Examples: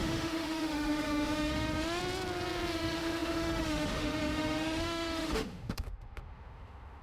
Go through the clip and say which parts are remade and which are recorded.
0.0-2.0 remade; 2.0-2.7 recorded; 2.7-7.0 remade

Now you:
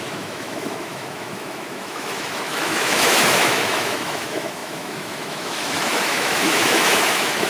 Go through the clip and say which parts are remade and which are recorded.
0.0-7.5 remade

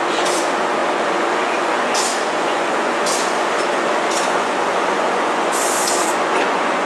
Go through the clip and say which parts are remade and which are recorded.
0.0-6.9 remade

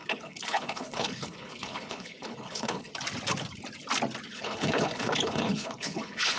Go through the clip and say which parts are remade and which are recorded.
0.0-2.9 remade; 2.9-4.3 recorded; 4.3-6.4 remade

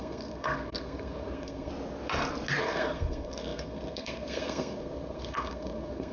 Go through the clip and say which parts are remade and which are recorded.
0.0-1.7 remade; 1.7-2.6 recorded; 2.6-6.1 remade

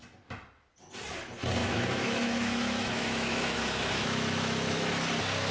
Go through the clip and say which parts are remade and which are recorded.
0.0-1.6 recorded; 1.6-4.9 remade; 4.9-5.5 recorded

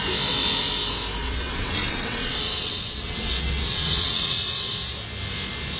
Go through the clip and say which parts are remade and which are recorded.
0.0-1.2 recorded; 1.2-4.7 remade; 4.7-5.8 recorded